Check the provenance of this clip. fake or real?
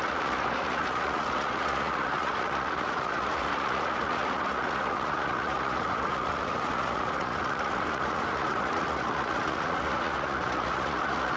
fake